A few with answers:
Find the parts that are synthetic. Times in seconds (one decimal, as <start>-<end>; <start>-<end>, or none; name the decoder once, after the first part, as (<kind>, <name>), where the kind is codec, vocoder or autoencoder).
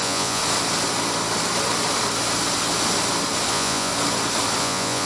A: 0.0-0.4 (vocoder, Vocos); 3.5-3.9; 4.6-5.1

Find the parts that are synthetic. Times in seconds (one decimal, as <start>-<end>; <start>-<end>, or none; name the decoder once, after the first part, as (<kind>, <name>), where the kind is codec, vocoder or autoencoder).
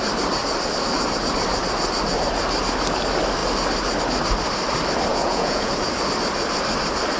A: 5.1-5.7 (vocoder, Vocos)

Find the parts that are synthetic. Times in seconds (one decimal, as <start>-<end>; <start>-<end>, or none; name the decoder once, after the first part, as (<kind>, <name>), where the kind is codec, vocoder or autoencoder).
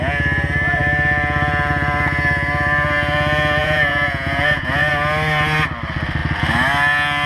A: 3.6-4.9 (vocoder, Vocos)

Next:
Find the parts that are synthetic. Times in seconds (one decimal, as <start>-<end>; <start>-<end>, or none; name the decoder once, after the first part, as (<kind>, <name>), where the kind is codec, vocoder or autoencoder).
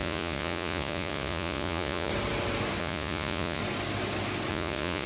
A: 0.0-2.1 (vocoder, Vocos); 2.8-3.6; 4.5-5.1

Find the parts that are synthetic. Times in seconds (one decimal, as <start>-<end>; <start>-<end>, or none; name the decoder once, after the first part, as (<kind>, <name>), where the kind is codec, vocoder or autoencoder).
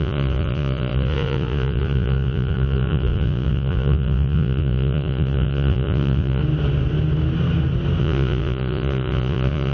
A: 0.0-6.4 (vocoder, Vocos); 8.0-9.7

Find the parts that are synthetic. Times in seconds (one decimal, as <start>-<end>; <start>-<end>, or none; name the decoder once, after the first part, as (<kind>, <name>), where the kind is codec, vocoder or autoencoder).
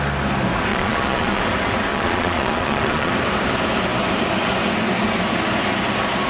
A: 0.7-1.4 (vocoder, Vocos); 1.9-3.1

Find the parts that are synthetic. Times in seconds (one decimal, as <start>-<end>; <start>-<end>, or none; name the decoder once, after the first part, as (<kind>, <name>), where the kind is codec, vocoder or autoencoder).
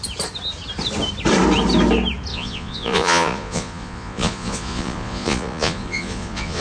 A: 2.3-6.6 (vocoder, Vocos)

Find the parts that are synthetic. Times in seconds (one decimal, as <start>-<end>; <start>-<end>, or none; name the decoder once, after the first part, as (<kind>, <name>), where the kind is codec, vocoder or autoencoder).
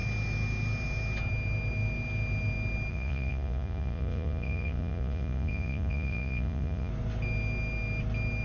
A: 2.9-6.9 (vocoder, Vocos)